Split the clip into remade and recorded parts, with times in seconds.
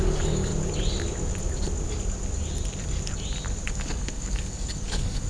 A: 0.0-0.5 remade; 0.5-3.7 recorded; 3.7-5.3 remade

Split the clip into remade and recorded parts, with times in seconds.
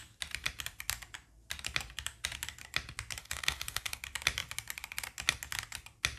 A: 0.0-3.2 recorded; 3.2-4.0 remade; 4.0-6.2 recorded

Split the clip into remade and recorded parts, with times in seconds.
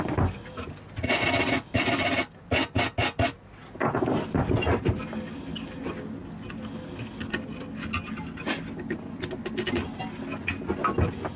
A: 0.0-11.4 recorded